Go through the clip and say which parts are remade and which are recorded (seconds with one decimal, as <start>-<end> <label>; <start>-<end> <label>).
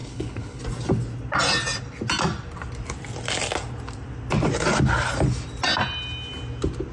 0.0-0.6 remade; 0.6-6.9 recorded